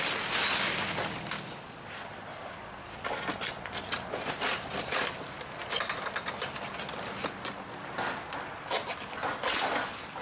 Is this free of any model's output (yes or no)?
yes